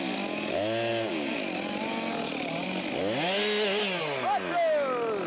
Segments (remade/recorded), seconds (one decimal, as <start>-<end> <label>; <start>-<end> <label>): 0.0-5.3 recorded